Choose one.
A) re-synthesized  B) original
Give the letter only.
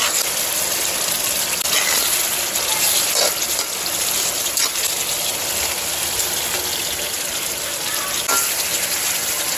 B